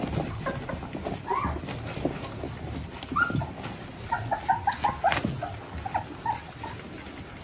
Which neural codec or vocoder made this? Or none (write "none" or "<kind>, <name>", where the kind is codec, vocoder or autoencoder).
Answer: none